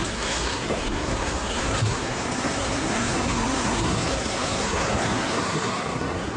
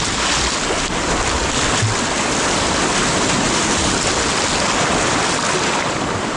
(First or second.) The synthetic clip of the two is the first